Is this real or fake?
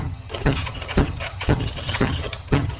fake